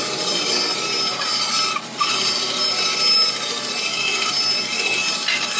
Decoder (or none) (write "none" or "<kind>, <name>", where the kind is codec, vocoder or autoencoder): none